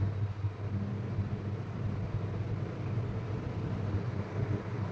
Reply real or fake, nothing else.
real